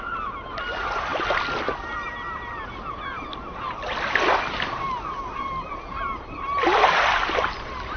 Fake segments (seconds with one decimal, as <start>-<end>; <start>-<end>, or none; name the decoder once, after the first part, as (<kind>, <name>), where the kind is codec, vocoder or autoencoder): none